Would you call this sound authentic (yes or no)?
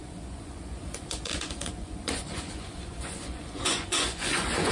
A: no